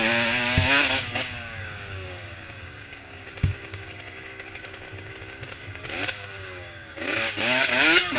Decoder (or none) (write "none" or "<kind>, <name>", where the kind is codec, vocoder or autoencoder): codec, DAC